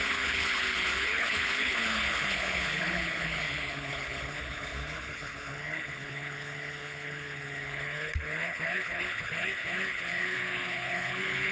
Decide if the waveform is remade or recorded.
remade